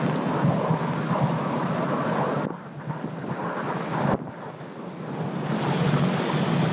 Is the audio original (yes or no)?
yes